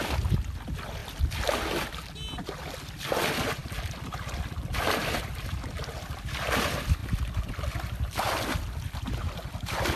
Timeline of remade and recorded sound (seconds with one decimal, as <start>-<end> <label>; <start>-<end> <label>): 0.0-3.6 recorded; 3.6-5.8 remade; 5.8-7.0 recorded; 7.0-7.5 remade; 7.5-10.0 recorded